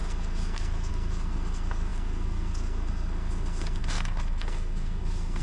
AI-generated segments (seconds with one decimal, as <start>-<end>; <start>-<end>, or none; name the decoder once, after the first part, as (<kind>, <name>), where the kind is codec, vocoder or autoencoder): 0.0-5.4 (codec, SNAC)